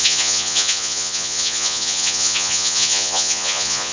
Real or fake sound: fake